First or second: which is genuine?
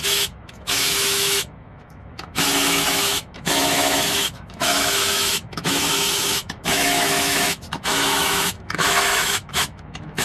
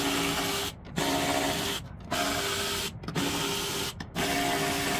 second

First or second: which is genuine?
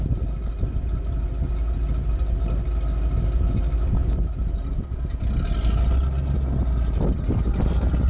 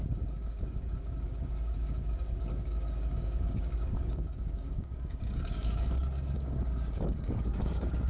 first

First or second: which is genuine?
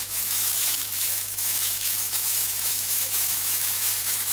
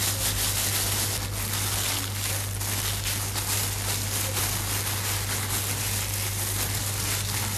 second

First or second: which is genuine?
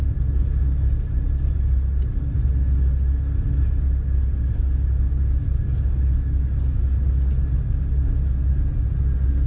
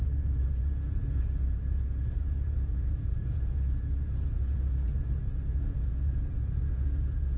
first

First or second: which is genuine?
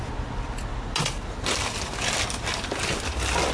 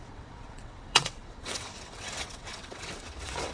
first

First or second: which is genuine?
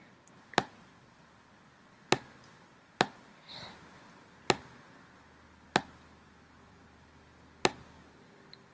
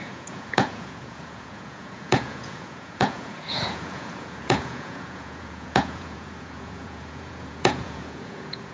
first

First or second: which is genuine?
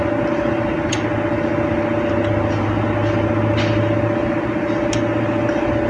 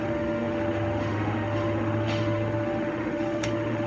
first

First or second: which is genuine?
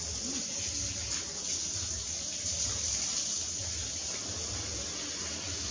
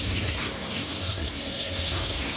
first